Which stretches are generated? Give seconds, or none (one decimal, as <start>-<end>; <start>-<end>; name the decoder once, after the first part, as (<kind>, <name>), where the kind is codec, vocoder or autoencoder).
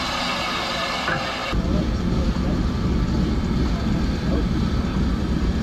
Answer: none